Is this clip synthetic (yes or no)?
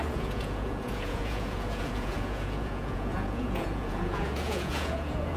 yes